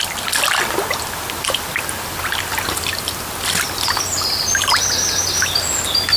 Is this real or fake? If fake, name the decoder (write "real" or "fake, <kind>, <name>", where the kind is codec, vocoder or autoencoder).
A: real